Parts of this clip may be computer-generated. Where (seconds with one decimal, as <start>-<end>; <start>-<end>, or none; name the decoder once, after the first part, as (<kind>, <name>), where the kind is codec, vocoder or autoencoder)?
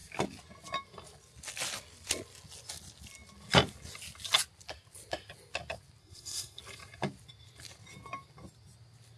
6.0-6.6 (codec, SNAC)